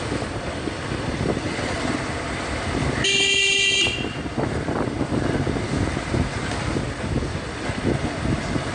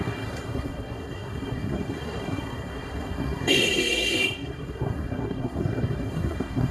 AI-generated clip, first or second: second